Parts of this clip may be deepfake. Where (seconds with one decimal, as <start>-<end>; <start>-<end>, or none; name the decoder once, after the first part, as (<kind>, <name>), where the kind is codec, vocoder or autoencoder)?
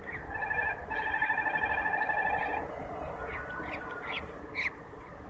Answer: none